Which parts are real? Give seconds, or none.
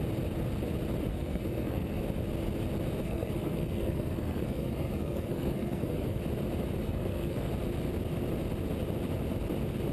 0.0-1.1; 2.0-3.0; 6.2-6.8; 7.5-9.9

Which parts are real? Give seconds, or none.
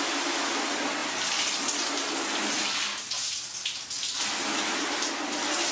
0.0-5.7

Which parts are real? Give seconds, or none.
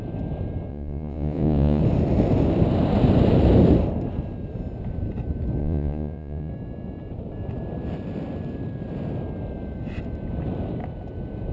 0.0-0.7; 1.8-5.6; 6.5-11.5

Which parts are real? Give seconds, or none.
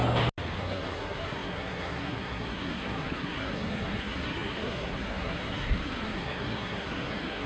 0.0-0.6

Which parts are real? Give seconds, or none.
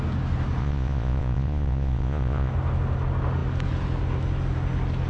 0.0-0.6; 2.5-5.1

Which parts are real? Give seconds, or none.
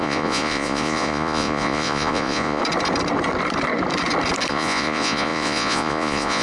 2.6-4.5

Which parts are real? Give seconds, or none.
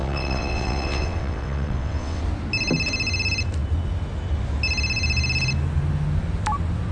2.2-6.9